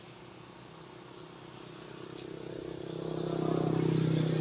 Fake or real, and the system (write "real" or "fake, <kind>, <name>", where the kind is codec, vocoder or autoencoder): real